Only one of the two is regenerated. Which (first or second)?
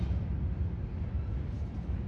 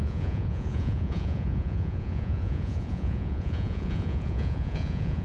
second